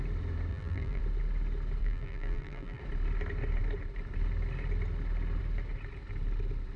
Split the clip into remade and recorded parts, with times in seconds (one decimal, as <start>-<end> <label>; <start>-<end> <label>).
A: 0.0-0.5 recorded; 0.5-1.0 remade; 1.0-1.8 recorded; 1.8-2.8 remade; 2.8-6.8 recorded